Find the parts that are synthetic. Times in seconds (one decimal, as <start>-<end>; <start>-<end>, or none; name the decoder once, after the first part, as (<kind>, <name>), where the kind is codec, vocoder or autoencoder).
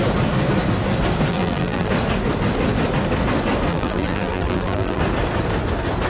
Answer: 1.3-1.9 (vocoder, BigVGAN v2); 3.7-5.0